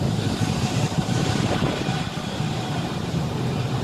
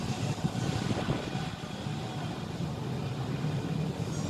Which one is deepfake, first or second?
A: first